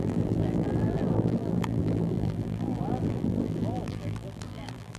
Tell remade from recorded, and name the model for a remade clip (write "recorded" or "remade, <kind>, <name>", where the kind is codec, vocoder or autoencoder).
remade, vocoder, BigVGAN v2